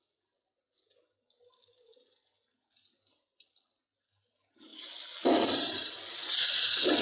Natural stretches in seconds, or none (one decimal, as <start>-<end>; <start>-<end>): 0.0-7.0